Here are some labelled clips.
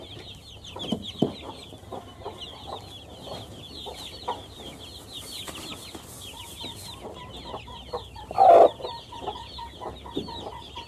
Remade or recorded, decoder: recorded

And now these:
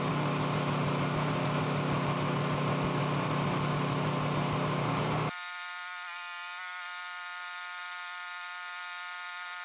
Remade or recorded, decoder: recorded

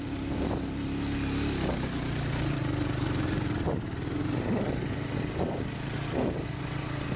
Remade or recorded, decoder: recorded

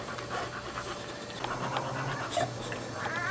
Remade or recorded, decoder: recorded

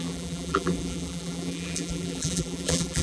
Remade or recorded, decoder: remade, vocoder, BigVGAN v2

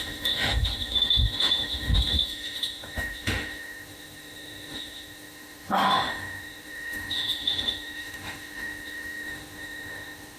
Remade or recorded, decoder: remade, autoencoder, DAC-VAE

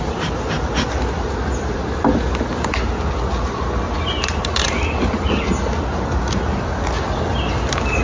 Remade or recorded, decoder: recorded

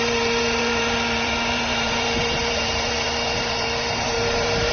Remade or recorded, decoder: remade, vocoder, BigVGAN v2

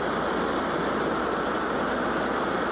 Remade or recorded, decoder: recorded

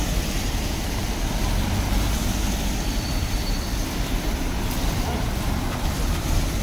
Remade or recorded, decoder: remade, vocoder, BigVGAN v2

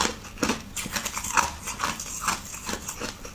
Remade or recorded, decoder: recorded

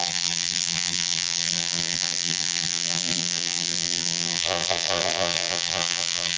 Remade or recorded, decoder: remade, vocoder, BigVGAN v2